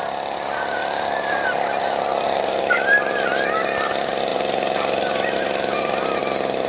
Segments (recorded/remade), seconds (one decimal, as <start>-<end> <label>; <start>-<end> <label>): 0.0-0.8 recorded; 0.8-2.6 remade; 2.6-4.3 recorded; 4.3-6.2 remade; 6.2-6.7 recorded

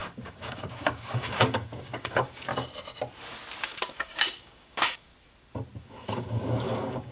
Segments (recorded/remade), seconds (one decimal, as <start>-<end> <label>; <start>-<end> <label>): 0.0-2.5 remade; 2.5-3.6 recorded; 3.6-5.1 remade; 5.1-5.8 recorded; 5.8-7.1 remade

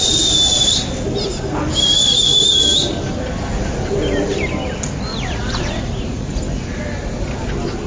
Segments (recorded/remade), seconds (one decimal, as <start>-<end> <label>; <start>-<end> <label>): 0.0-5.1 recorded; 5.1-6.4 remade; 6.4-7.9 recorded